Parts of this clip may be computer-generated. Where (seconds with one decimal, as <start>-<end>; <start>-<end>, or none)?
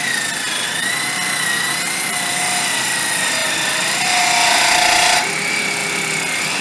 none